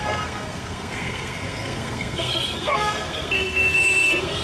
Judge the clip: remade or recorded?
remade